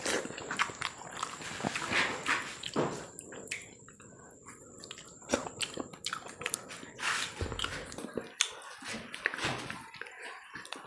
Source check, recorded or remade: recorded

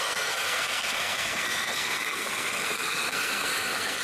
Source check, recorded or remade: remade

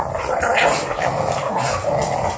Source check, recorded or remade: recorded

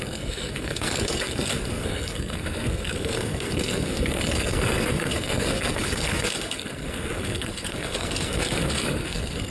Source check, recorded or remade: remade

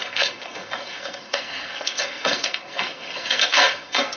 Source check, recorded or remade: remade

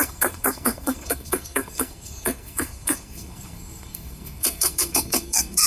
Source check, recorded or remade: remade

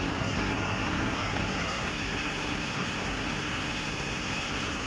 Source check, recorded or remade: remade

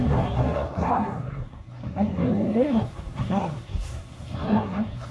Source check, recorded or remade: remade